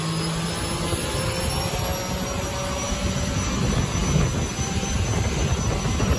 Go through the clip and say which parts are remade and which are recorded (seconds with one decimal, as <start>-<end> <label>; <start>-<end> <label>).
0.0-6.2 recorded